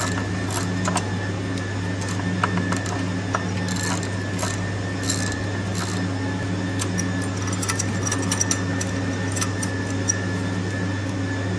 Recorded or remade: recorded